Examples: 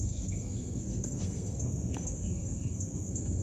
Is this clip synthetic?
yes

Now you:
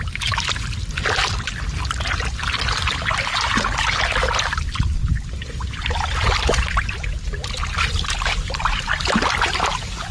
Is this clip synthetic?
no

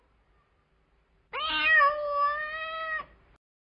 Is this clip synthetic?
no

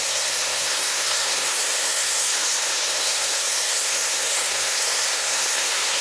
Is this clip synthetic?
yes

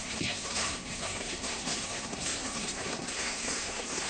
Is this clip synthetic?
yes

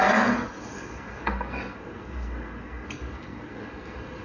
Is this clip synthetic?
yes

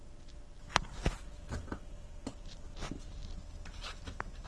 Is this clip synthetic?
no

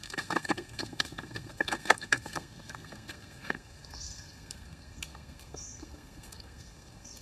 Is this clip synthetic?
yes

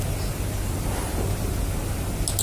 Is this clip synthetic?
no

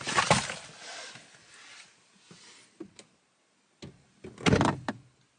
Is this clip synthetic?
no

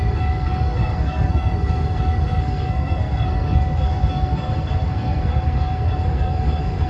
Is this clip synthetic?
yes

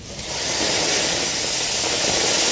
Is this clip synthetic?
no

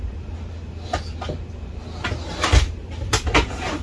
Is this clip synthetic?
no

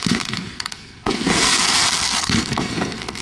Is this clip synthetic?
yes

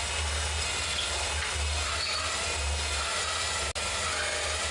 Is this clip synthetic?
no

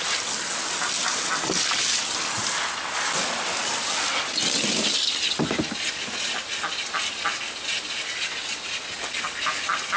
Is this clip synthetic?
no